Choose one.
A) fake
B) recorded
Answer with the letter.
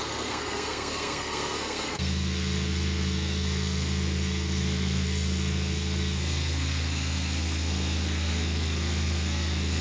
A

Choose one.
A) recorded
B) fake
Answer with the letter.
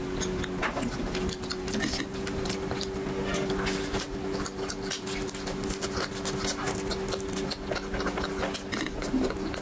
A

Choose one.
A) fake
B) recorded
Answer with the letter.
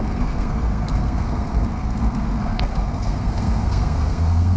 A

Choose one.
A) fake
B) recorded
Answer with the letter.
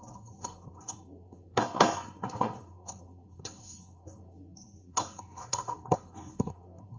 A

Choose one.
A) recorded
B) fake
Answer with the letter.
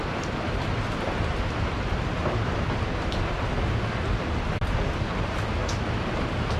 A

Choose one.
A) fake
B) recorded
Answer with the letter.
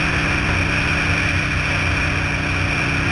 B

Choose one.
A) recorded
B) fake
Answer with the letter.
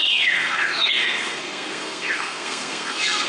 B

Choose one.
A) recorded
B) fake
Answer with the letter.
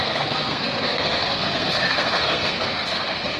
B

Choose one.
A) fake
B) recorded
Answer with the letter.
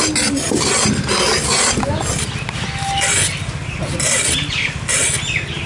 B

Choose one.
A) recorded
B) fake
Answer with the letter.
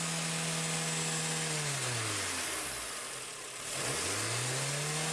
A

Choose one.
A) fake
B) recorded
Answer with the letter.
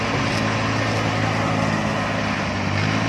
B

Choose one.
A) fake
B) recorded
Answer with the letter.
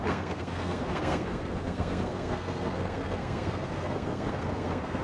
A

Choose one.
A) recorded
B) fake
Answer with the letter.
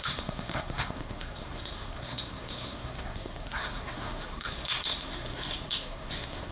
B